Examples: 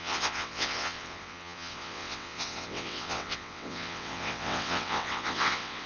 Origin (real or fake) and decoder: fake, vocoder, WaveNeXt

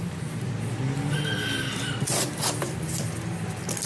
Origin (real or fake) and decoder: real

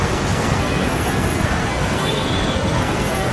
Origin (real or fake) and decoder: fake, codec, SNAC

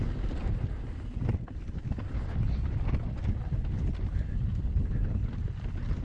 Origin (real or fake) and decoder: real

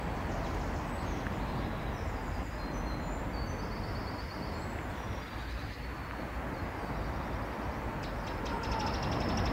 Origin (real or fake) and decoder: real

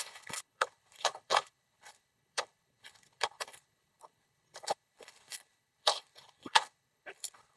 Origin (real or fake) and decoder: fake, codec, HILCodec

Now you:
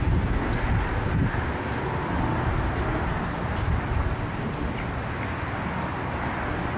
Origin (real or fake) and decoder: real